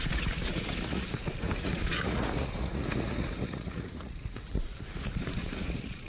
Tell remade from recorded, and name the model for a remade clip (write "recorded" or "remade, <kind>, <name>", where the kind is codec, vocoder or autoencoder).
remade, vocoder, Vocos